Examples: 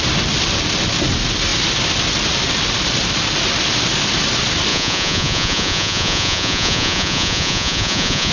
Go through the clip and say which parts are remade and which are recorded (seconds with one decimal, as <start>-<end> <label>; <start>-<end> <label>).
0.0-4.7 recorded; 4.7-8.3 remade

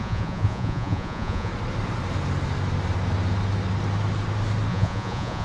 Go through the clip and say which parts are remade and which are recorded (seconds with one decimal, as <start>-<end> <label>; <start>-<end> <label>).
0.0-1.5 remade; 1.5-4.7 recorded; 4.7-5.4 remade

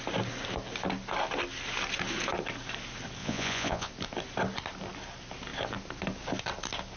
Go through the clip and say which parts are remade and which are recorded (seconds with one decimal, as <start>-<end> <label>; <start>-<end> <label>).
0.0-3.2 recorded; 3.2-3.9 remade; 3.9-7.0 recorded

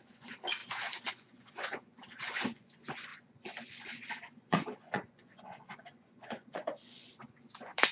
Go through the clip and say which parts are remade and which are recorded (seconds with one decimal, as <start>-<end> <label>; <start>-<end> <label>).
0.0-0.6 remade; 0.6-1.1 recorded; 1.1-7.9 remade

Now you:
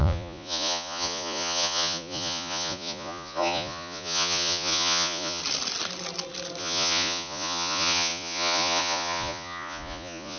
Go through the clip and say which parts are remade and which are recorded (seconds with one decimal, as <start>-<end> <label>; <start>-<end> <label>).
0.0-5.4 remade; 5.4-6.6 recorded; 6.6-10.4 remade

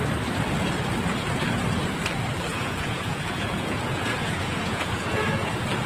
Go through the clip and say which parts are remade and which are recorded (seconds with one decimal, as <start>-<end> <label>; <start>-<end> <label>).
0.0-2.5 recorded; 2.5-5.5 remade; 5.5-5.9 recorded

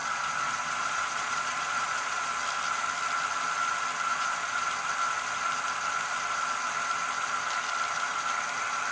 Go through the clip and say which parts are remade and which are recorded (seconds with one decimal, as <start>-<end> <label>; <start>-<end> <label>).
0.0-2.3 remade; 2.3-4.1 recorded; 4.1-4.7 remade; 4.7-8.9 recorded

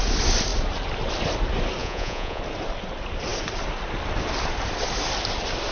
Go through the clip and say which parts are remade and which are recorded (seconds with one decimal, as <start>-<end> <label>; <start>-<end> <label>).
0.0-1.8 recorded; 1.8-2.4 remade; 2.4-5.7 recorded